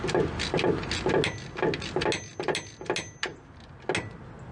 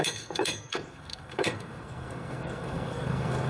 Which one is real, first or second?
first